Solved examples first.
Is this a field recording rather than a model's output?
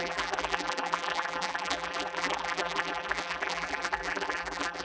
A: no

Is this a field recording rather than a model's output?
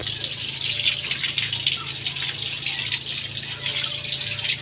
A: yes